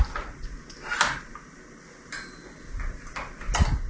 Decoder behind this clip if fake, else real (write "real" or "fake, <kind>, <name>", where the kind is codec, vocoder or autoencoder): real